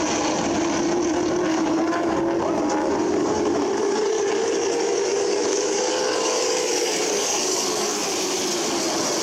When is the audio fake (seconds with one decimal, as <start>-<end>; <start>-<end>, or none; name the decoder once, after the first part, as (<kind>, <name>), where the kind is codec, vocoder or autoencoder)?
1.5-2.2 (codec, DAC); 2.8-8.0